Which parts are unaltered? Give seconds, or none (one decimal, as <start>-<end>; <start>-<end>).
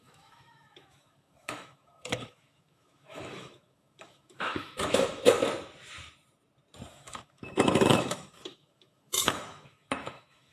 5.4-6.9